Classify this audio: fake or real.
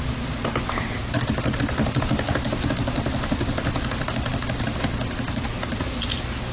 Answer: real